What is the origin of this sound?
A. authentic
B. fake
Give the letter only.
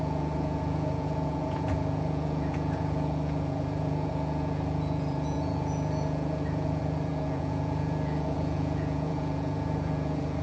B